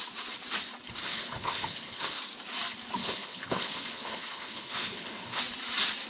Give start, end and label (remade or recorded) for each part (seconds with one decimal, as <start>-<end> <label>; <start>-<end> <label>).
0.0-1.0 recorded; 1.0-2.2 remade; 2.2-3.0 recorded; 3.0-5.4 remade; 5.4-6.1 recorded